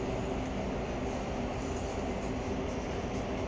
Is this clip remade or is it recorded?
recorded